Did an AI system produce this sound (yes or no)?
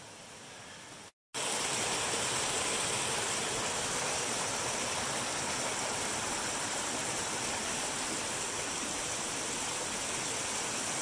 no